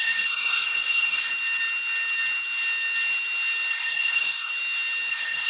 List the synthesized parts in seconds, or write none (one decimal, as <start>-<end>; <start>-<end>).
0.0-1.3; 3.7-4.5; 5.1-5.5